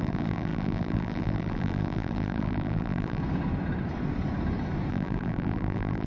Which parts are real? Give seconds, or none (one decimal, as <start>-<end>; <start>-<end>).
3.2-4.9